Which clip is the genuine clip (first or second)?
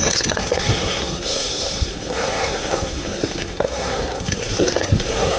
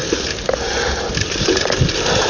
second